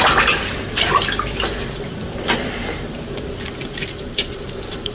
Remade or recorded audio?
remade